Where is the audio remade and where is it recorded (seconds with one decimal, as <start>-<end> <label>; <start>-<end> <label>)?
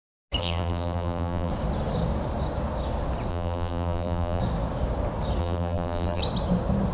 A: 0.0-0.4 recorded; 0.4-1.5 remade; 1.5-3.3 recorded; 3.3-4.4 remade; 4.4-5.4 recorded; 5.4-6.2 remade; 6.2-6.9 recorded